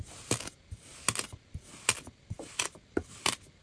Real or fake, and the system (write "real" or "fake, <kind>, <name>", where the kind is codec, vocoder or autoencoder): real